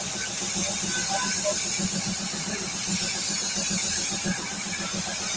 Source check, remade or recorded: recorded